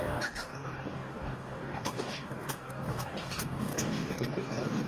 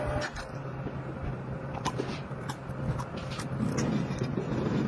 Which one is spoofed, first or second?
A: first